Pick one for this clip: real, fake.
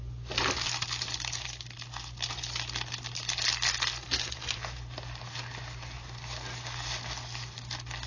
real